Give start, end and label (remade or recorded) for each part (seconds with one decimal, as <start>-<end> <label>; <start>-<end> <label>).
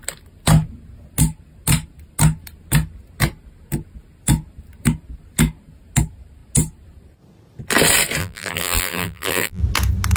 0.0-8.2 recorded; 8.2-9.6 remade; 9.6-10.2 recorded